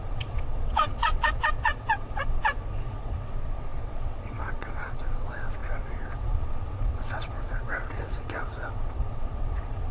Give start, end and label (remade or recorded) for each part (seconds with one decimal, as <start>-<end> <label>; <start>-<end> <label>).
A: 0.0-9.9 remade